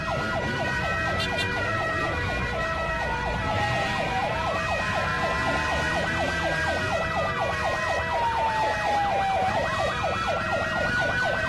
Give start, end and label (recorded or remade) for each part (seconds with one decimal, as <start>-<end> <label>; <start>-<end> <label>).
0.0-5.1 remade; 5.1-9.5 recorded; 9.5-11.5 remade